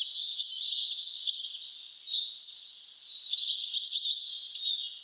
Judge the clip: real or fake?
real